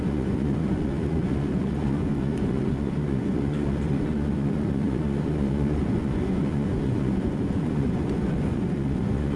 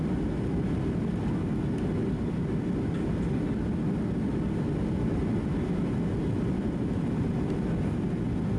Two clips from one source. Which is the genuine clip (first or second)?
second